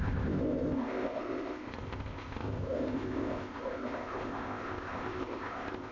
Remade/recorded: remade